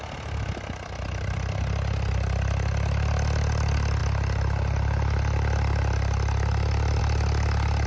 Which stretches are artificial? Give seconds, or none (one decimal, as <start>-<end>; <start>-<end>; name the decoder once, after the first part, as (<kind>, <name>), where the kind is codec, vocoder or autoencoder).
none